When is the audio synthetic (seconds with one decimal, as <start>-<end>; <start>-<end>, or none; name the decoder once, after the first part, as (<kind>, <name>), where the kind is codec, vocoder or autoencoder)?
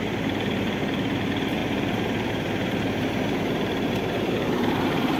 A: 0.0-5.2 (vocoder, BigVGAN v2)